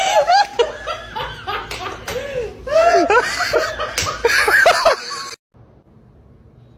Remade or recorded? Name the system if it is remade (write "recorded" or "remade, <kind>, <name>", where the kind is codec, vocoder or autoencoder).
recorded